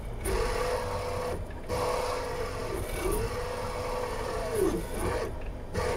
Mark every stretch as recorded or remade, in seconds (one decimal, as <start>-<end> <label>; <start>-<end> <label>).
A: 0.0-2.6 recorded; 2.6-5.2 remade; 5.2-6.0 recorded